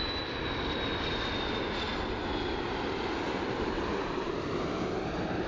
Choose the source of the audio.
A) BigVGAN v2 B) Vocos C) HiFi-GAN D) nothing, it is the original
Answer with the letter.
D